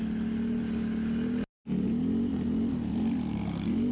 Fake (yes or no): no